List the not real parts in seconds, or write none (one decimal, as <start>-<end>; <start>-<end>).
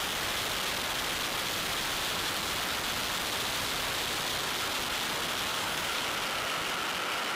5.5-6.0